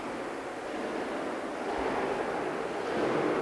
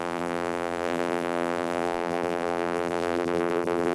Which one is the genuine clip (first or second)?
first